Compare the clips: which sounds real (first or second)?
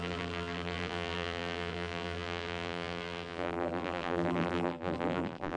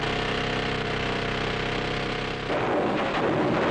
second